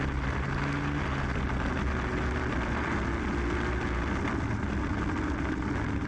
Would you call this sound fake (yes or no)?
no